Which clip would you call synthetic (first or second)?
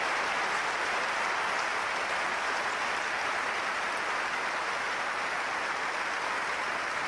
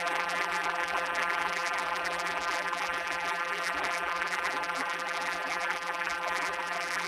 second